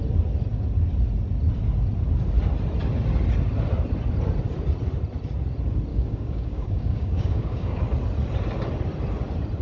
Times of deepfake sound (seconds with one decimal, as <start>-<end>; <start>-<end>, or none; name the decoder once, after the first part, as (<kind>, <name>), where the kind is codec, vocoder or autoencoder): 5.9-7.8 (codec, DAC)